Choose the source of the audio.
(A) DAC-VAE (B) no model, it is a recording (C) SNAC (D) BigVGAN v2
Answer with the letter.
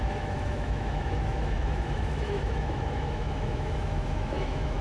A